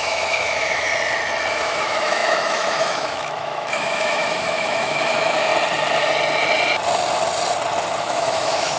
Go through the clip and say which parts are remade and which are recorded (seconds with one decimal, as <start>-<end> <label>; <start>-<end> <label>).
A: 0.0-0.9 remade; 0.9-1.5 recorded; 1.5-5.5 remade; 5.5-8.0 recorded; 8.0-8.8 remade